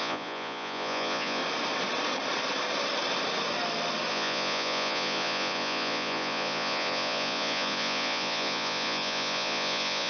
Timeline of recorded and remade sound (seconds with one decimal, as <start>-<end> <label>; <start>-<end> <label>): 0.0-1.4 remade; 1.4-4.1 recorded; 4.1-10.1 remade